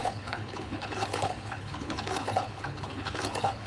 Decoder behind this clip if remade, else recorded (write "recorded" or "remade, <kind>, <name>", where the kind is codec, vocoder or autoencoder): remade, codec, HILCodec